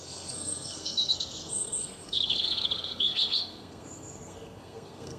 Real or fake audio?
fake